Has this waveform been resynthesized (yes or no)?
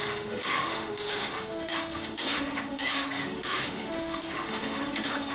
yes